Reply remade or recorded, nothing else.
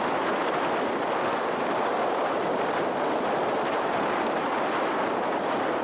recorded